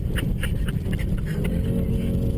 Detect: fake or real real